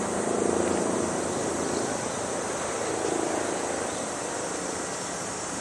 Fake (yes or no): no